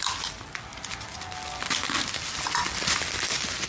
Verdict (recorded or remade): recorded